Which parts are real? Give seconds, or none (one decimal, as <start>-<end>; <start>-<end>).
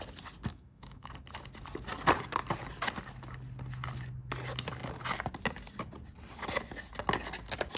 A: 0.0-0.5; 1.1-7.8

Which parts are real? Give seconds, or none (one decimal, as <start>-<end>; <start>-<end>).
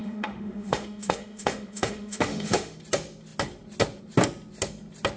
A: 2.8-5.2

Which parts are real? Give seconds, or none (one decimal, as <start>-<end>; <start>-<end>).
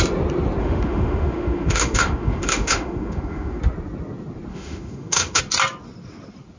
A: 0.0-0.6; 3.6-4.5; 5.4-6.6